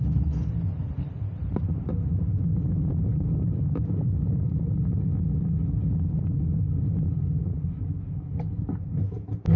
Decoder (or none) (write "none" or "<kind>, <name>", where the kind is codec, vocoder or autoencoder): none